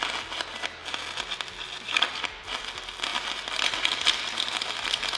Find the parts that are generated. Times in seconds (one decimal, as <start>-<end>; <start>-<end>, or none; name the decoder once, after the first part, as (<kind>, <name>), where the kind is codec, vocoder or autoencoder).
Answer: none

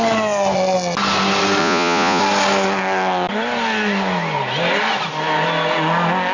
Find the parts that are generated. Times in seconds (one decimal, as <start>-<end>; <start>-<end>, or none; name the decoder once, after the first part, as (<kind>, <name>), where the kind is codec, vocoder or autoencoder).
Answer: 1.6-2.2 (vocoder, Vocos)

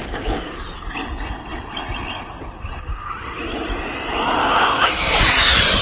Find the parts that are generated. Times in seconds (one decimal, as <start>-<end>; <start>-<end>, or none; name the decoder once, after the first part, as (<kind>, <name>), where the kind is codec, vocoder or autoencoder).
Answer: 0.0-0.6 (codec, DAC); 4.4-5.2

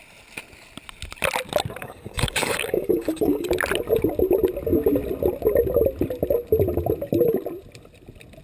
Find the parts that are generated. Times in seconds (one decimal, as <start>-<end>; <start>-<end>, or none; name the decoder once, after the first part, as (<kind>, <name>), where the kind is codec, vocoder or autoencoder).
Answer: 1.8-3.5 (codec, DAC)

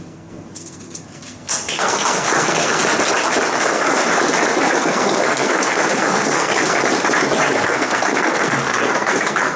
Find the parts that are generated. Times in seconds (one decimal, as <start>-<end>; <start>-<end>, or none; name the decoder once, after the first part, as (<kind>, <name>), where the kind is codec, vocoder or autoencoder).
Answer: 0.0-2.8 (codec, SNAC); 3.6-4.1; 4.6-6.8; 7.4-9.6

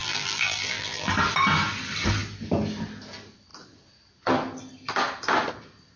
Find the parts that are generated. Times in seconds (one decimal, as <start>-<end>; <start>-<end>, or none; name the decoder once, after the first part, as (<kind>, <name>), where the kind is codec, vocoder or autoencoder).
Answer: 0.0-1.1 (vocoder, BigVGAN v2)

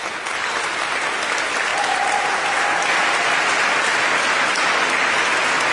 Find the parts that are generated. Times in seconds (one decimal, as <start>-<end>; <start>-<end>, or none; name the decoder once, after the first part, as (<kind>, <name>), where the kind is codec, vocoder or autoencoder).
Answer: none